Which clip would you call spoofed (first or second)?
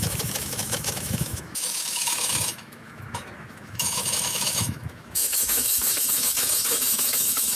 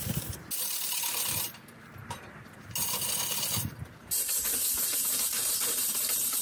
first